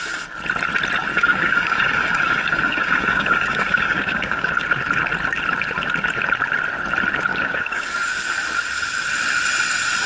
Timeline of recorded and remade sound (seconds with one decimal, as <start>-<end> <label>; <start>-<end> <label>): 0.0-1.1 recorded; 1.1-4.5 remade; 4.5-7.3 recorded; 7.3-8.2 remade; 8.2-10.1 recorded